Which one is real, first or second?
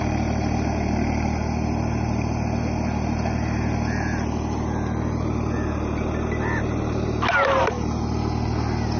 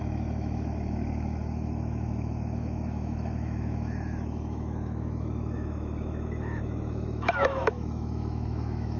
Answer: first